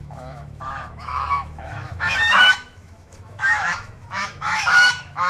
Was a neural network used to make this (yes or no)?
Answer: yes